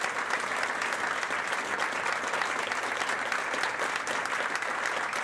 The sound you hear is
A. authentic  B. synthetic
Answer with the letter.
A